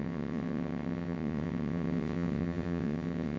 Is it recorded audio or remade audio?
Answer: remade